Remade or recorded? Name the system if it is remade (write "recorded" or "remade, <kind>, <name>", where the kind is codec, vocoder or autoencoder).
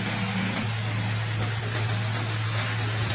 recorded